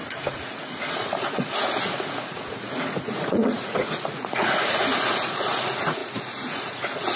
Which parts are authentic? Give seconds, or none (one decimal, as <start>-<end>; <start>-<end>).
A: none